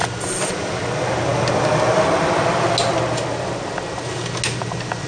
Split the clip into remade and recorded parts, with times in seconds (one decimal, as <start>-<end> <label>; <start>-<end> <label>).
0.0-5.1 recorded